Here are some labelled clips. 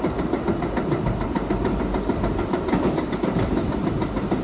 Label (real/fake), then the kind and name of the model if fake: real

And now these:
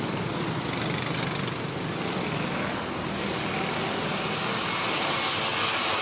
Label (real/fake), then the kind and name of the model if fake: real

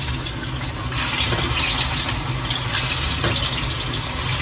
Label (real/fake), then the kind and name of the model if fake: real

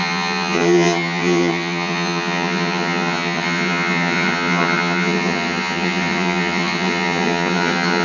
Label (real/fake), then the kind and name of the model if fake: fake, vocoder, HiFi-GAN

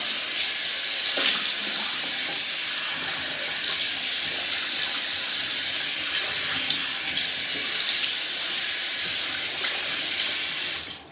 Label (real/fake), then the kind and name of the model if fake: real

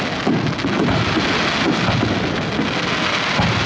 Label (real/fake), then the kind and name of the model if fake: real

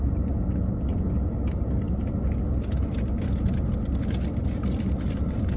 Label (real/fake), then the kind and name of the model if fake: real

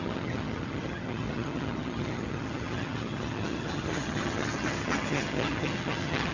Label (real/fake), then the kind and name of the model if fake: fake, vocoder, HiFi-GAN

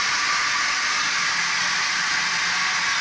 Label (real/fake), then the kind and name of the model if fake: real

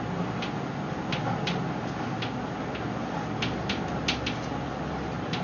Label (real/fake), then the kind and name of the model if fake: real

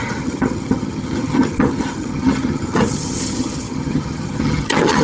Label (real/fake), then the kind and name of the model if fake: fake, vocoder, HiFi-GAN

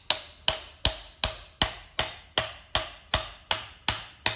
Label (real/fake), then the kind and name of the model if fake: real